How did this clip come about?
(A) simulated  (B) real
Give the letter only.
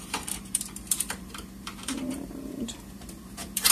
A